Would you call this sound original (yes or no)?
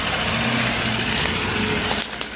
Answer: yes